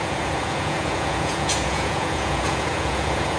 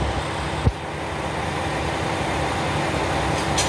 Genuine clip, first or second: second